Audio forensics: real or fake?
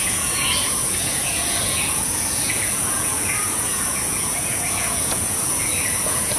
fake